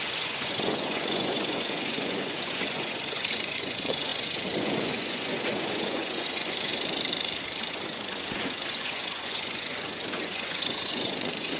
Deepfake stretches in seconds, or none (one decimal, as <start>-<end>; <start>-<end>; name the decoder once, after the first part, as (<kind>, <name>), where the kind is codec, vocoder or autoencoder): 0.0-6.7 (vocoder, Vocos); 7.7-11.6